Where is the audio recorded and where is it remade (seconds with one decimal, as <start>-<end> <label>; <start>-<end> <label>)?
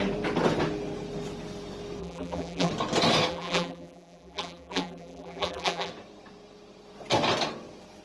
0.0-2.0 recorded; 2.0-2.7 remade; 2.7-3.3 recorded; 3.3-5.9 remade; 5.9-8.0 recorded